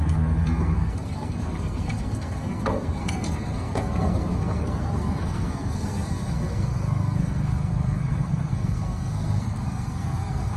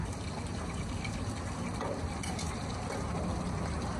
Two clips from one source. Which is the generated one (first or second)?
first